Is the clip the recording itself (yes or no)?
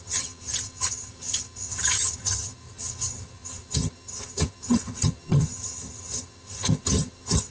no